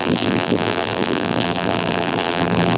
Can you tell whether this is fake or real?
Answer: fake